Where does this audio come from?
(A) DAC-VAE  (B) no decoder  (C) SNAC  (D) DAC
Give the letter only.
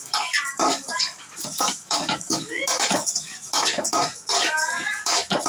D